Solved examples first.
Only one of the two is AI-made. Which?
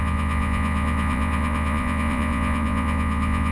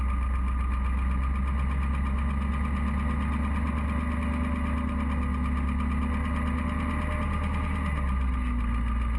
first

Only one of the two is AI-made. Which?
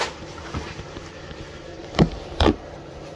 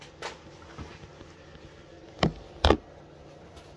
first